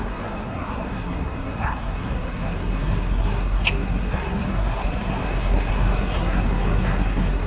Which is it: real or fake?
fake